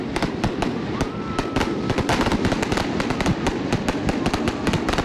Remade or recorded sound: recorded